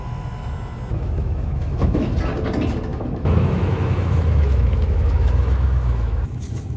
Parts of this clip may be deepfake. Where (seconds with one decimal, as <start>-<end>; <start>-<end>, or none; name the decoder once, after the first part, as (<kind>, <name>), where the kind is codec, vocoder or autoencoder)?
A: 0.9-2.1 (autoencoder, DAC-VAE); 2.9-6.8